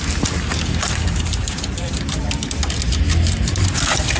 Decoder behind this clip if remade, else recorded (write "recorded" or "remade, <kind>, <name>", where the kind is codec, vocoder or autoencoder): recorded